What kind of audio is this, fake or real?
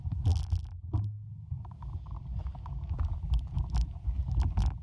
real